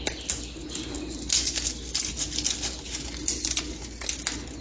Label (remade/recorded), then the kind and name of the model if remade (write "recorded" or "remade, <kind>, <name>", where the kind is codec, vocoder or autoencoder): recorded